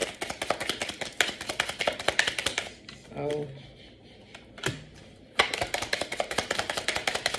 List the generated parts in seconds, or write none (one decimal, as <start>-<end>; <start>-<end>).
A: 5.0-7.4